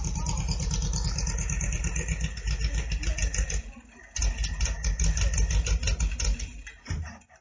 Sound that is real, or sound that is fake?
real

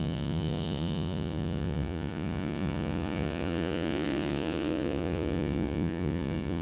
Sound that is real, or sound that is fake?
fake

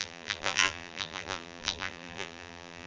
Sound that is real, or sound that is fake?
fake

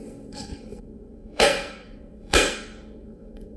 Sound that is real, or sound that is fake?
fake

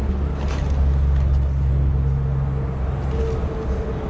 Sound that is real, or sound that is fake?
real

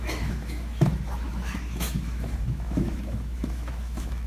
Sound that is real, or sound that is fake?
fake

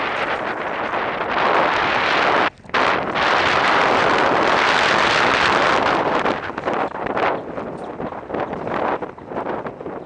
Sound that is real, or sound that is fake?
real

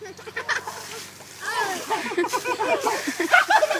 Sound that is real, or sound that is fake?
real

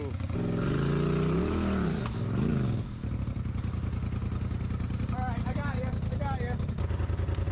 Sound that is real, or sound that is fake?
real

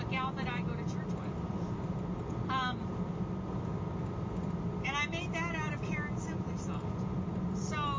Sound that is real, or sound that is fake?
real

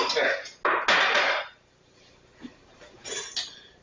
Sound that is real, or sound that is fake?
real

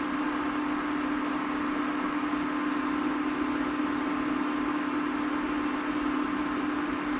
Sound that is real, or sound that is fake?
real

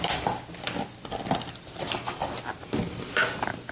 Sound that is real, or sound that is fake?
real